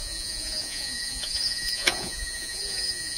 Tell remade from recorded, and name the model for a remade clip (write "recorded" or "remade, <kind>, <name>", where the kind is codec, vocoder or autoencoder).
remade, vocoder, Vocos